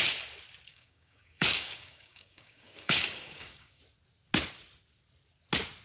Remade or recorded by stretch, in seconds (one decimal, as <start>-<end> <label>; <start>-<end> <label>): 0.0-0.7 recorded; 0.7-3.8 remade; 3.8-5.8 recorded